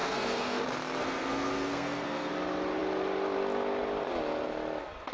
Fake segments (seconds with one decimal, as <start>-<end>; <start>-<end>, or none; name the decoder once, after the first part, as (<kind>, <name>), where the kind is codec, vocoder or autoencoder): 0.0-0.6 (codec, SNAC); 1.0-2.3